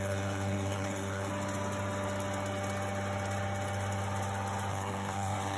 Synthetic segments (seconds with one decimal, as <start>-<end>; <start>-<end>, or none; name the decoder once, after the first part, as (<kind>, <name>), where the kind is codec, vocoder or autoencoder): 0.0-1.3 (codec, SNAC); 4.7-5.6